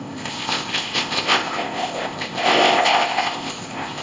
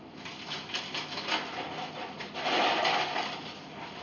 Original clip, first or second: second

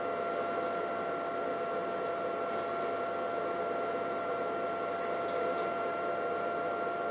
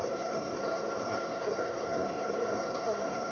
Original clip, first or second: first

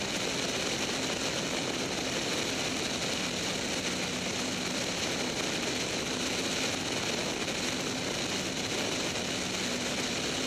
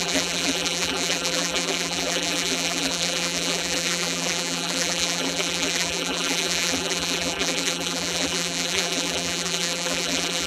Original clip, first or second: first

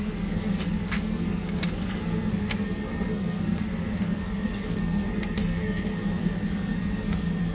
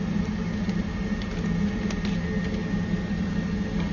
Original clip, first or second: second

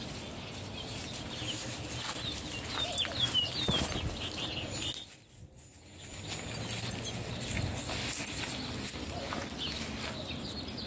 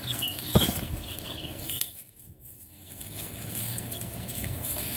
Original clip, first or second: first